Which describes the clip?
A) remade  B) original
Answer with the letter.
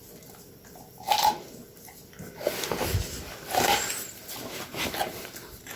B